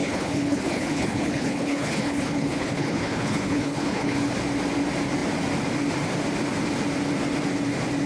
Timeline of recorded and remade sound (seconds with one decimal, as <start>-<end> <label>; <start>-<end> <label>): 0.0-4.3 remade; 4.3-8.1 recorded